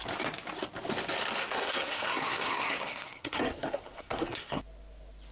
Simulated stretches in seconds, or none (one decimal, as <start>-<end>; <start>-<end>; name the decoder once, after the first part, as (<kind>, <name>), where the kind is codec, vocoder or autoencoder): 1.4-4.6 (codec, SNAC)